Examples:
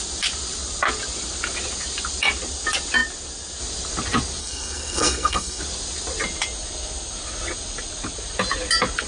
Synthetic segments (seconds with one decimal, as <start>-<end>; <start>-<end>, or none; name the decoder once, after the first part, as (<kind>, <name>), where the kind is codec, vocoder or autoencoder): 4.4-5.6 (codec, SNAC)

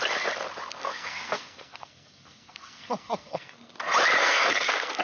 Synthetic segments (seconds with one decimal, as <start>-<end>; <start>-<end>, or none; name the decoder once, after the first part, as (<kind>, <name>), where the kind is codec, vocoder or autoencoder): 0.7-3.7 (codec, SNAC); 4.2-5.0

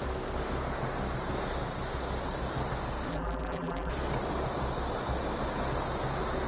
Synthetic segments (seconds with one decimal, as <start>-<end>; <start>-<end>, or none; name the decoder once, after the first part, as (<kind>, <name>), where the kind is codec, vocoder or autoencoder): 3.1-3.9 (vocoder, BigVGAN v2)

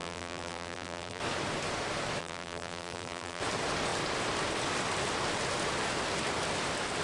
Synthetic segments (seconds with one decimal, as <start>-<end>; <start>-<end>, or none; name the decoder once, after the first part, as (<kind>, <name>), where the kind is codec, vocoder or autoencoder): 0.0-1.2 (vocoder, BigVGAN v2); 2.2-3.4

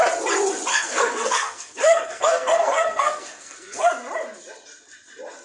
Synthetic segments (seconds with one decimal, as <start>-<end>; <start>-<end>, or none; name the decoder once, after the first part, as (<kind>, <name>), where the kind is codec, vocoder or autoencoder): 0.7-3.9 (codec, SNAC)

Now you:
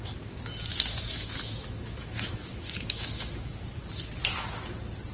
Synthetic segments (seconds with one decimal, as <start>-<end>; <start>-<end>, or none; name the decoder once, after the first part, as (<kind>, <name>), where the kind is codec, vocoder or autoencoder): 0.7-3.8 (autoencoder, DAC-VAE)

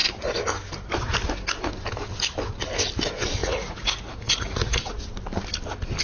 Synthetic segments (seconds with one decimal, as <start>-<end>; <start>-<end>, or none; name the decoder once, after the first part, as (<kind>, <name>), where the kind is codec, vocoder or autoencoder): 3.4-4.9 (vocoder, Vocos)

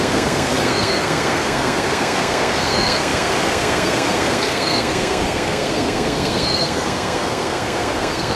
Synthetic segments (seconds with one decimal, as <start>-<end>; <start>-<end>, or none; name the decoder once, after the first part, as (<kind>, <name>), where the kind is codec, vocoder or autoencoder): 0.0-8.4 (codec, SNAC)